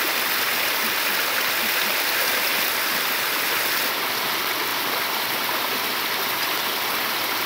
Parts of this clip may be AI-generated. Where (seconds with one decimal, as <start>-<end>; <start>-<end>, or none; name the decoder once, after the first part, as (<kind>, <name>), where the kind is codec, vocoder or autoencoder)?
none